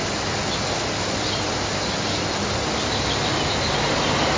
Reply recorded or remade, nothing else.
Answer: recorded